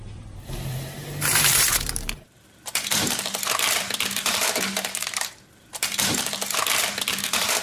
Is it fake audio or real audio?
fake